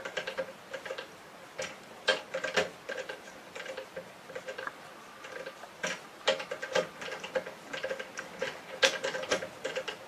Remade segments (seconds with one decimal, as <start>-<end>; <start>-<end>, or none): 0.0-2.1; 2.9-7.7; 8.4-10.1